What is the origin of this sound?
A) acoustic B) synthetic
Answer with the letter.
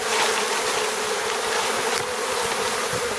A